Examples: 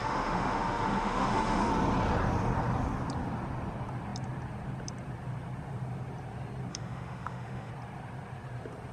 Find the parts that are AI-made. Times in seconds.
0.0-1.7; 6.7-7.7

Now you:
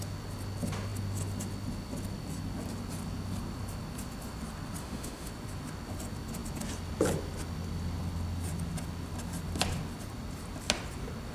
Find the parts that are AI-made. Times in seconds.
4.8-5.3

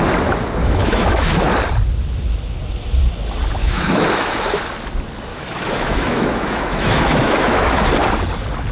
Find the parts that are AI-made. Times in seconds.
0.6-1.4; 3.6-4.6; 5.3-7.9